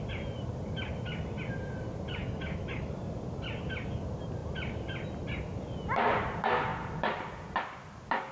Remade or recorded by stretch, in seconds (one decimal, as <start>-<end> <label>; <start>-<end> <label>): 0.0-2.2 recorded; 2.2-2.9 remade; 2.9-8.3 recorded